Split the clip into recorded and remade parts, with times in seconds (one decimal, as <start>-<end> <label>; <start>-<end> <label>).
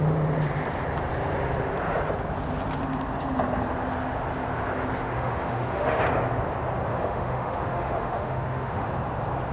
0.0-5.0 recorded; 5.0-6.0 remade; 6.0-6.9 recorded; 6.9-8.9 remade; 8.9-9.5 recorded